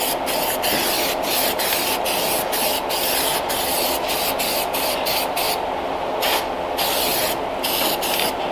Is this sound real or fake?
real